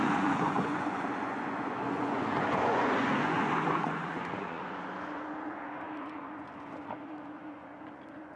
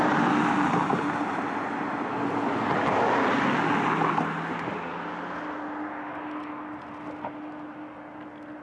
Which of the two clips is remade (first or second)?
first